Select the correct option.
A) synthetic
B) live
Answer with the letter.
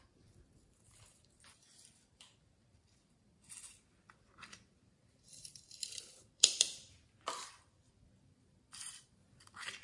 A